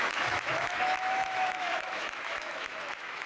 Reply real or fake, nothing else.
fake